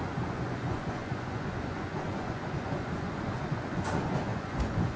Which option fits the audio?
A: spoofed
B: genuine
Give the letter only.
A